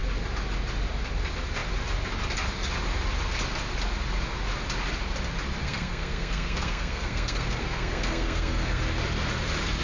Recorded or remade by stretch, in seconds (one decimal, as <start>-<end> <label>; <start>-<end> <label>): 0.0-5.6 recorded; 5.6-8.8 remade; 8.8-9.8 recorded

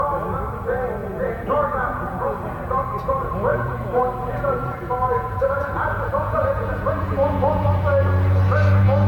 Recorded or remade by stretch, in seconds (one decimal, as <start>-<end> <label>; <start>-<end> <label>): 0.0-1.0 recorded; 1.0-2.9 remade; 2.9-3.5 recorded; 3.5-7.7 remade; 7.7-9.1 recorded

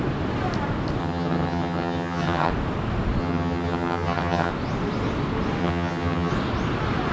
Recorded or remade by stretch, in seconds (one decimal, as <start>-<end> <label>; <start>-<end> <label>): 0.0-1.0 recorded; 1.0-2.5 remade; 2.5-3.2 recorded; 3.2-4.5 remade; 4.5-5.6 recorded; 5.6-6.3 remade; 6.3-7.1 recorded

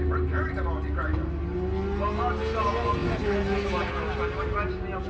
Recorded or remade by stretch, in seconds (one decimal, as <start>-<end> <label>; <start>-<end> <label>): 0.0-5.1 recorded

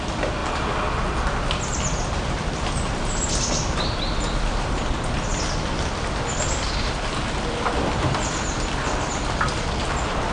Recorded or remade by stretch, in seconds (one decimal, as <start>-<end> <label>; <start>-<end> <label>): 0.0-10.3 recorded

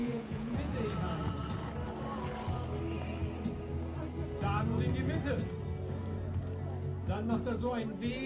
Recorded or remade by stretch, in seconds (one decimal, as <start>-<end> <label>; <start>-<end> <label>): 0.0-0.7 remade; 0.7-8.3 recorded

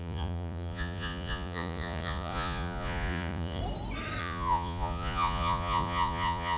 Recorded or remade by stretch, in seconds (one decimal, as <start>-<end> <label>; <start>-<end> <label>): 0.0-3.6 remade; 3.6-4.2 recorded; 4.2-6.6 remade

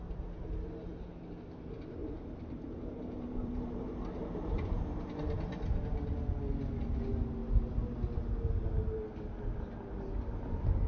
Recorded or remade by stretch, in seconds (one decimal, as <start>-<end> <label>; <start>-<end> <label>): 0.0-2.0 recorded; 2.0-4.9 remade; 4.9-5.7 recorded; 5.7-6.6 remade; 6.6-10.9 recorded